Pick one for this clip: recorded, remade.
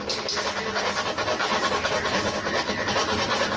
recorded